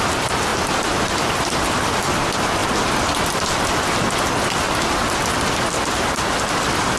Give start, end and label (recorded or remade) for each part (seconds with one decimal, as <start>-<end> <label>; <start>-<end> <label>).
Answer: 0.0-7.0 recorded